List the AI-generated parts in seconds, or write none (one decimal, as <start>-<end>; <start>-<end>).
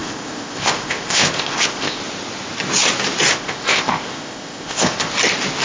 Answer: 0.0-2.0; 3.3-5.1